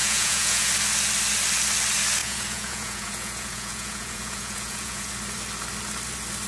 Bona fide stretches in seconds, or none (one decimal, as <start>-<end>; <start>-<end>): 0.7-2.2; 5.1-6.5